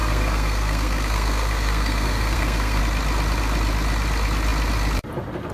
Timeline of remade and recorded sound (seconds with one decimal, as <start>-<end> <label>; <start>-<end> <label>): 0.0-2.8 remade; 2.8-5.5 recorded